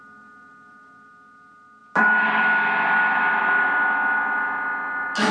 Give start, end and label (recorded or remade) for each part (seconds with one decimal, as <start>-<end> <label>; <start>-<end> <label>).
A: 0.0-5.3 recorded